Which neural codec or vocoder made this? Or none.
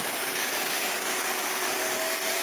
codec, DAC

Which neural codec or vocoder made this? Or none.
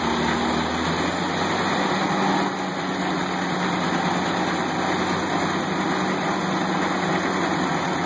none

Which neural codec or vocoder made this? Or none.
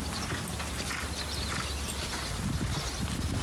none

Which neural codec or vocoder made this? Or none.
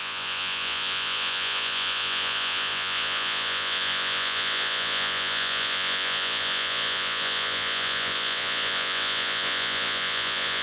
vocoder, Vocos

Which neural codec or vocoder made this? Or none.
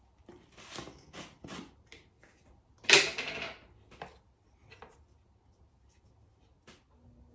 none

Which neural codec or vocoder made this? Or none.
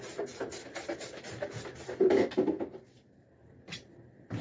none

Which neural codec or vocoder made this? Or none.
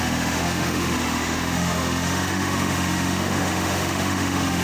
autoencoder, DAC-VAE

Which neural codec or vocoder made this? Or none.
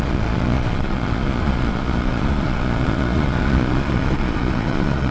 vocoder, Vocos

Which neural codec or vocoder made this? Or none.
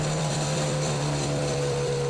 vocoder, BigVGAN v2